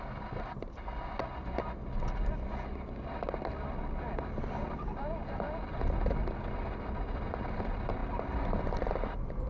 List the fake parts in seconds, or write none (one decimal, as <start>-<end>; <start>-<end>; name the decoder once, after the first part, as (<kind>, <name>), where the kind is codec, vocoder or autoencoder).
none